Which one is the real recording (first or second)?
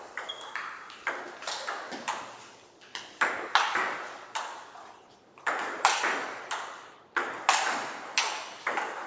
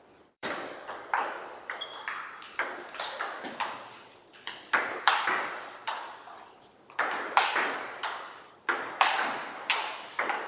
first